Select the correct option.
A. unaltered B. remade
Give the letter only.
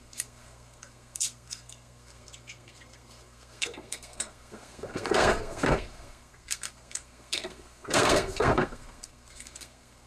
B